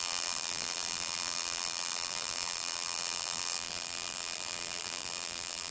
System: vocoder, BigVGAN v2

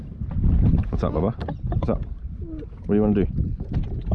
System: none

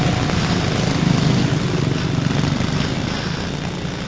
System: none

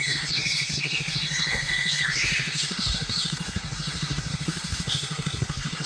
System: codec, SNAC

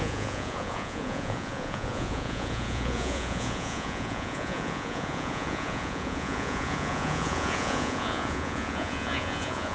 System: vocoder, Vocos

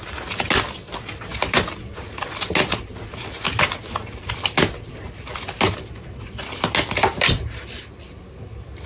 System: none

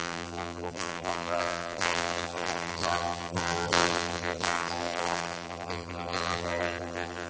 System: vocoder, BigVGAN v2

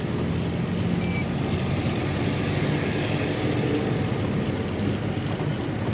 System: none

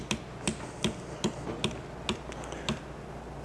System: none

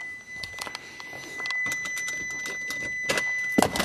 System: none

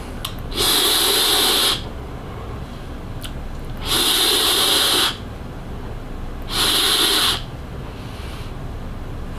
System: none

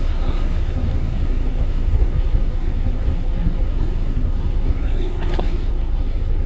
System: codec, SNAC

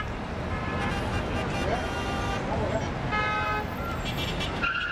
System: none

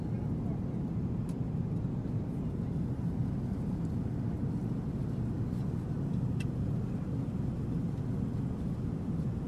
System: none